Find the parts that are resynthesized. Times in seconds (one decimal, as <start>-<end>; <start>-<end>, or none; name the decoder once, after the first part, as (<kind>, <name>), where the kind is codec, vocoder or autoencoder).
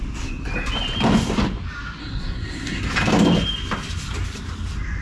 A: 2.0-2.8 (codec, SNAC)